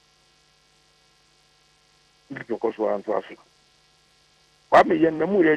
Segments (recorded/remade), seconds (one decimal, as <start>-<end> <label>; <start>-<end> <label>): 0.0-2.4 recorded; 2.4-5.6 remade